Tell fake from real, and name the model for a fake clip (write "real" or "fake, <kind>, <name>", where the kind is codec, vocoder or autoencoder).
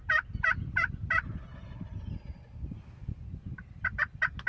real